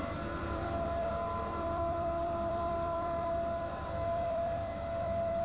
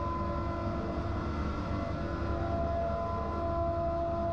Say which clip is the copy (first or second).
first